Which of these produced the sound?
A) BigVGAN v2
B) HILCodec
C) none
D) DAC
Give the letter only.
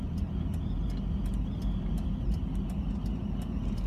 C